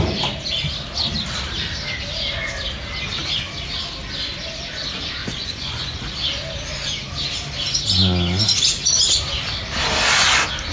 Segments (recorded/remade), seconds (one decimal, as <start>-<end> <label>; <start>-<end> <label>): 0.0-5.2 recorded; 5.2-6.1 remade; 6.1-10.7 recorded